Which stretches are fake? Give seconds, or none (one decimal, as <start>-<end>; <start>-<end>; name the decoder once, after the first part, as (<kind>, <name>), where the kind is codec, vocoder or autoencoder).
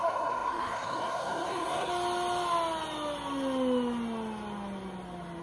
0.0-1.9 (codec, SNAC)